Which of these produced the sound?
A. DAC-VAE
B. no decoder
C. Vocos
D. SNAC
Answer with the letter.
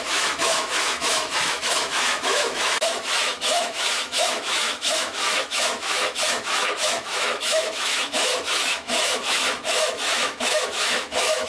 A